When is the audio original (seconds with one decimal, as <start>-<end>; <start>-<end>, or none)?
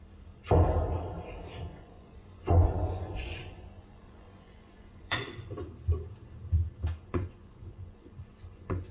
0.0-1.7; 5.5-7.0